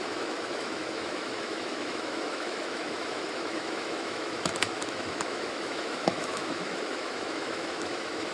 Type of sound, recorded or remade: remade